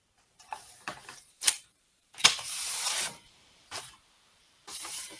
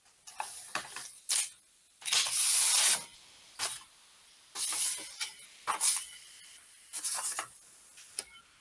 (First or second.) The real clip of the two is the second